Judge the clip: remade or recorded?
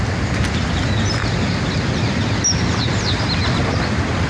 recorded